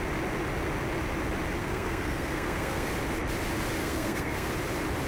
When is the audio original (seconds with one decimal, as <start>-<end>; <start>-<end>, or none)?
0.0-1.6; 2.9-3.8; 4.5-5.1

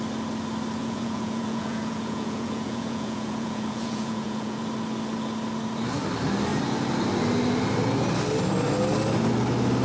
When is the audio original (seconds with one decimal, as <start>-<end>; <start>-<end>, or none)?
0.0-0.8; 4.6-9.8

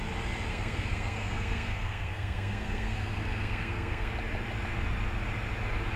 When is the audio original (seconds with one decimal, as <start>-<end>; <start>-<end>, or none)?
0.0-0.5; 4.1-6.0

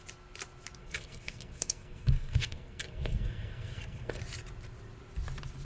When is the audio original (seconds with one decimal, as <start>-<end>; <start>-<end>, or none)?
0.0-0.8; 4.2-5.6

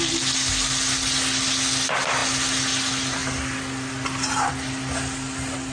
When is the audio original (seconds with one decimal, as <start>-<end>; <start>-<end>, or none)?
0.0-5.7

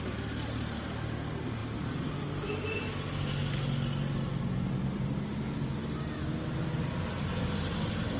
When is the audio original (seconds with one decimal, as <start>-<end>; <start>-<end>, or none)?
0.0-8.2

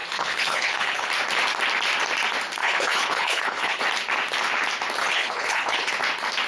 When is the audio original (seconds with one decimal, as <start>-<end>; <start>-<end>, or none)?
1.1-2.6; 3.8-5.0; 5.9-6.5